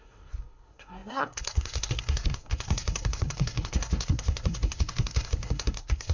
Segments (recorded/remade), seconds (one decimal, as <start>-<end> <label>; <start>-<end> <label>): 0.0-6.1 remade